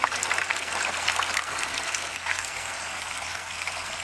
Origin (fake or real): fake